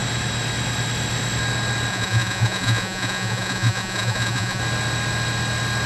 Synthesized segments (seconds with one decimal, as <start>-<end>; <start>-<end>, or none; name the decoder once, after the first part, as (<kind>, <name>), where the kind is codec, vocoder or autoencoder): 1.9-4.6 (vocoder, Vocos)